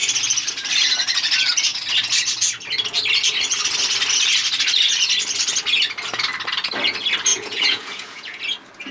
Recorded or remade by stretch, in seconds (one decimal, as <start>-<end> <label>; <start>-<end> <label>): 0.0-7.3 recorded; 7.3-8.4 remade; 8.4-8.9 recorded